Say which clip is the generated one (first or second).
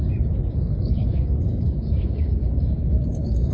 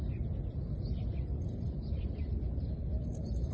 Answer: first